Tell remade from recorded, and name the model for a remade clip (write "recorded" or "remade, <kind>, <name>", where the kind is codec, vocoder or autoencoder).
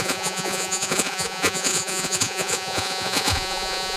remade, vocoder, Vocos